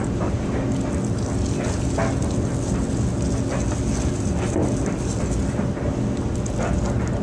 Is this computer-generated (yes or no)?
no